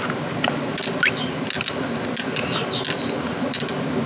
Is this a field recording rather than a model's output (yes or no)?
yes